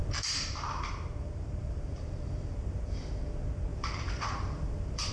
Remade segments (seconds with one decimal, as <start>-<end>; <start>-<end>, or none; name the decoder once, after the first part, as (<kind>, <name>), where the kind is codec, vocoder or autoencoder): 0.0-3.1 (vocoder, BigVGAN v2); 3.7-5.1